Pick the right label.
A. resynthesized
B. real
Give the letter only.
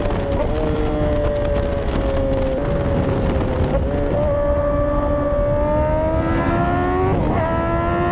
B